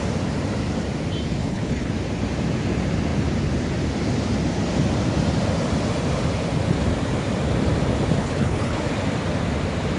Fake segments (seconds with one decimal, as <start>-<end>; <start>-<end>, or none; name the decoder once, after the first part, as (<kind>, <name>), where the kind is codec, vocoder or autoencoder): 1.4-1.9 (codec, HILCodec); 8.2-8.8